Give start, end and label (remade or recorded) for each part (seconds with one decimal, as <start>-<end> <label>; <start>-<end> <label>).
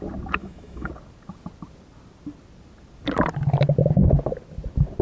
0.0-0.4 recorded; 0.4-0.9 remade; 0.9-5.0 recorded